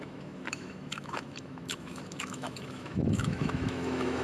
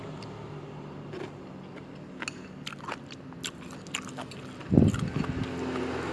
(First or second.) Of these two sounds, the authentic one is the second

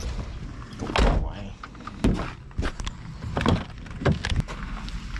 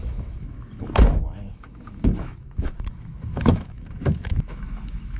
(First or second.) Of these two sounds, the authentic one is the first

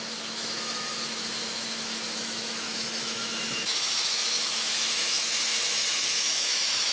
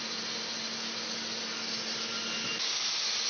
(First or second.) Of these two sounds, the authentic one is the second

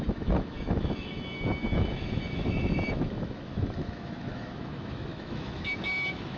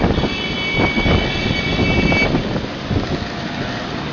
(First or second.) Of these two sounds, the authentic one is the second